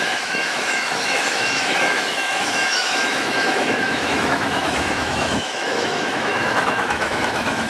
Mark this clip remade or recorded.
remade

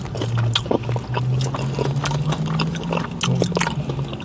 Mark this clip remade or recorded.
recorded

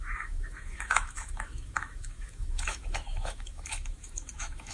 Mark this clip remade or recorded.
remade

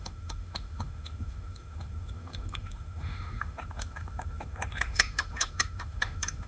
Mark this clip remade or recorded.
remade